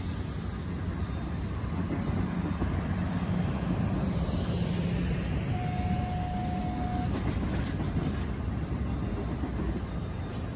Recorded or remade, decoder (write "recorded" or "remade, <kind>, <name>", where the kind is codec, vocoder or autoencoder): recorded